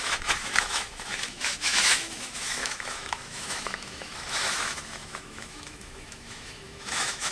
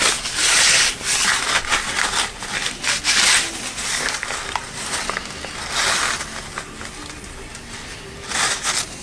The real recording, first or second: second